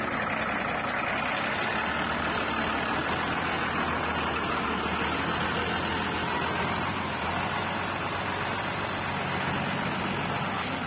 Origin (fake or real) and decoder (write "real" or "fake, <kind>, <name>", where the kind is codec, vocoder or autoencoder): real